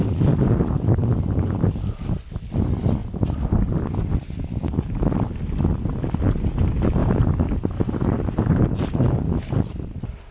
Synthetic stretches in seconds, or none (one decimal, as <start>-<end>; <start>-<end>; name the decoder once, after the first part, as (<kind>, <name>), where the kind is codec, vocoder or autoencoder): 7.0-9.3 (vocoder, BigVGAN v2)